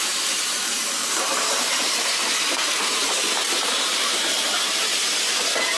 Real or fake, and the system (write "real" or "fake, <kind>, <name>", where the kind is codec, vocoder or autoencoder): fake, vocoder, BigVGAN v2